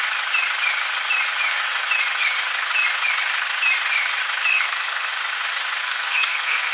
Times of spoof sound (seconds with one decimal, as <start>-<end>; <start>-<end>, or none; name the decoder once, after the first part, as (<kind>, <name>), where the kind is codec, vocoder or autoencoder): 4.5-5.1 (codec, SNAC); 5.8-6.7